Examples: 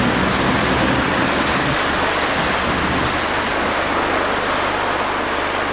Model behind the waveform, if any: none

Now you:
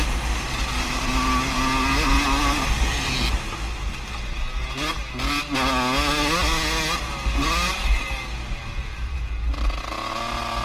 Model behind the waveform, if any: none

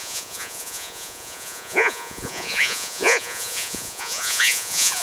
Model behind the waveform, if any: vocoder, Vocos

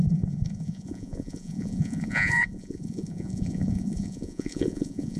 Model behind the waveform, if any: vocoder, Vocos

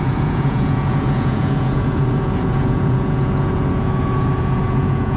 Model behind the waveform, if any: vocoder, Vocos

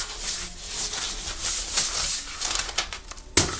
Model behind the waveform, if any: none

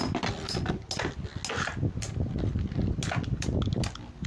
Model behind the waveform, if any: none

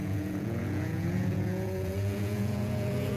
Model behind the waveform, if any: vocoder, Vocos